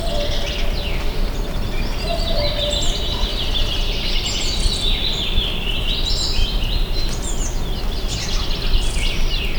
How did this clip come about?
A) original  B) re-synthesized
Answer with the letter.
B